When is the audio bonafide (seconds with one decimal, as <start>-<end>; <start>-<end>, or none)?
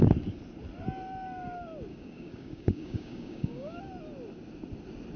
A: 0.0-1.9; 3.8-5.2